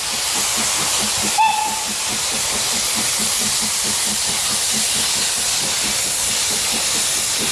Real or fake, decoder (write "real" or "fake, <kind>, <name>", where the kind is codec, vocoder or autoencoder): real